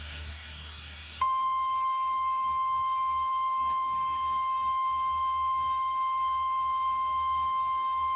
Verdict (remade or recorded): remade